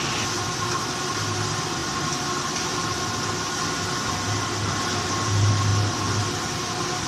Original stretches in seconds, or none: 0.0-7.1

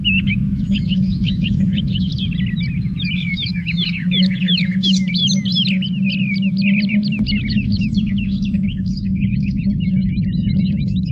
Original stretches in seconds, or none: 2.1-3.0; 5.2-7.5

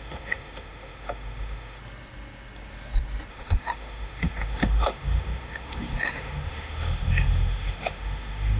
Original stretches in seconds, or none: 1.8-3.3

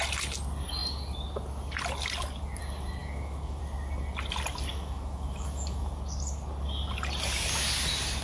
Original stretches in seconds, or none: 0.0-3.0; 3.6-4.7; 5.9-8.2

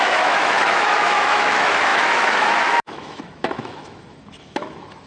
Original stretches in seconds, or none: none

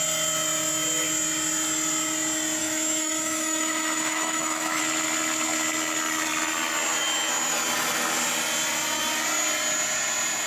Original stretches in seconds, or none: 0.0-2.6; 4.8-10.5

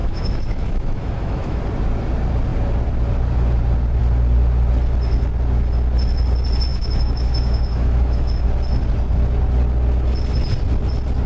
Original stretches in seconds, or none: 1.6-6.7; 8.3-11.3

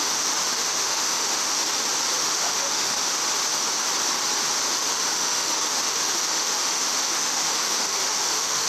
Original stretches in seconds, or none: 1.6-2.2; 3.2-4.7